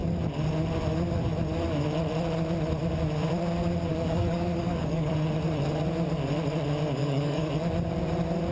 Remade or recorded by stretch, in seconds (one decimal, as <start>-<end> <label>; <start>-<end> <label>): 0.0-3.9 recorded; 3.9-5.1 remade; 5.1-7.0 recorded; 7.0-7.5 remade; 7.5-8.5 recorded